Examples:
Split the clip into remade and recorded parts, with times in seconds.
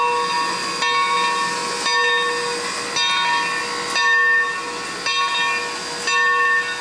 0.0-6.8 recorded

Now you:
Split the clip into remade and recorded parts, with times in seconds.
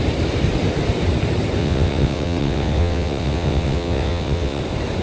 0.0-1.6 recorded; 1.6-4.6 remade; 4.6-5.0 recorded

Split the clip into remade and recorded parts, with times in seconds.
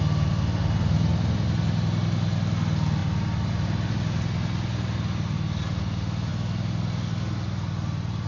0.0-8.3 recorded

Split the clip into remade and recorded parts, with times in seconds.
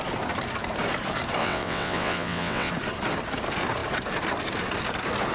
0.0-1.4 recorded; 1.4-2.7 remade; 2.7-5.3 recorded